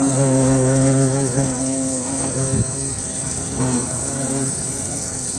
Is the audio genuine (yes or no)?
no